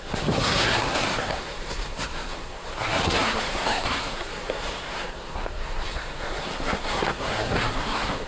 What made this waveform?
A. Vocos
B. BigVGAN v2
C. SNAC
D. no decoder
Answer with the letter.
C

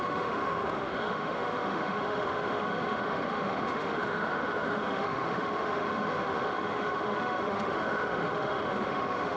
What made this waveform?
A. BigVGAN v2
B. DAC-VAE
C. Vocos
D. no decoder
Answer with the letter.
B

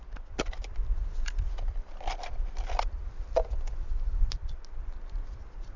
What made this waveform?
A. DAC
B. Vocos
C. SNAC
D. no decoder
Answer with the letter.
D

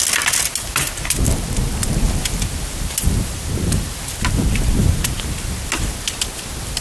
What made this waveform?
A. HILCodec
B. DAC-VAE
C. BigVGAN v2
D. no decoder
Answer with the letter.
D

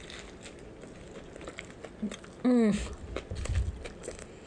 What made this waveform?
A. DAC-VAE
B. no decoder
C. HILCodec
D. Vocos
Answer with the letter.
B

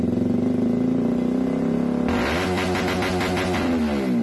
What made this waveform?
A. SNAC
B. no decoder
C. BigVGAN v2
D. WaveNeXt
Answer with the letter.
B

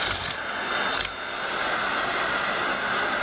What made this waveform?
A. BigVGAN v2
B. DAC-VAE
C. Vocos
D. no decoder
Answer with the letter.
D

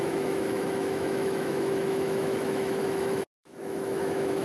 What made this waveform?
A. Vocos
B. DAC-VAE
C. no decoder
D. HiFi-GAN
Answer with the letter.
B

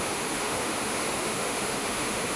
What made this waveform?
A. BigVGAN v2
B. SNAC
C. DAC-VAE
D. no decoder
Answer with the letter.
C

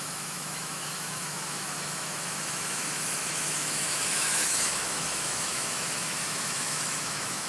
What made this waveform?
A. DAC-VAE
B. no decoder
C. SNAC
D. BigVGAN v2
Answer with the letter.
A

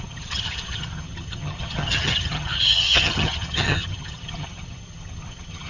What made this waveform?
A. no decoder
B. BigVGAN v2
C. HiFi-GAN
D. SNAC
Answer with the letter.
C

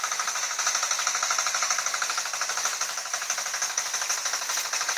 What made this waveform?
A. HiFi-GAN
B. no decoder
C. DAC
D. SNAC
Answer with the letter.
B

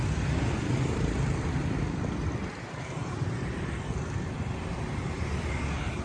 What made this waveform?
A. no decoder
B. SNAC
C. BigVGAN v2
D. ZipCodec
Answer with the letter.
C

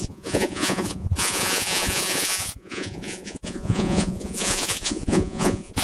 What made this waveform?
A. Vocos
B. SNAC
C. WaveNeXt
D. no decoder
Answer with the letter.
A